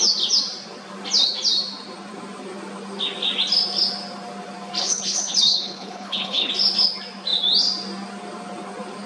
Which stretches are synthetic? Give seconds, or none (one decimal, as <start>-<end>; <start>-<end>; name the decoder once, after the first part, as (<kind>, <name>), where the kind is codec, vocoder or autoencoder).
4.8-6.5 (codec, HILCodec)